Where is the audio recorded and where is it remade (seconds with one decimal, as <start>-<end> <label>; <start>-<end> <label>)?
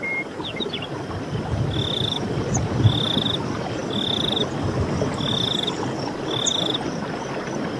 0.0-7.8 recorded